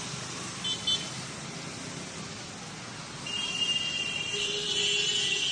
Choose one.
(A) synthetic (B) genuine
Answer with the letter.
B